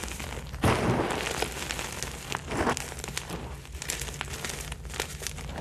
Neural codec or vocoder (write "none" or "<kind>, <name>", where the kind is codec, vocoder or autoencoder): none